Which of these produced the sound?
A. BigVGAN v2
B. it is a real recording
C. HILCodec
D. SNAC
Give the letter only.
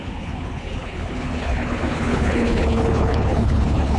C